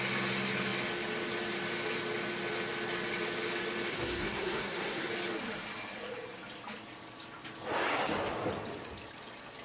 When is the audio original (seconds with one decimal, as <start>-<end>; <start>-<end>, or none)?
0.0-3.9; 5.1-9.6